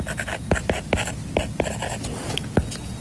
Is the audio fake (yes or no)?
no